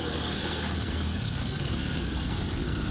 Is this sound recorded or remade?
remade